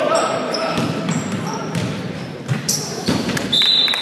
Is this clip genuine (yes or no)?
no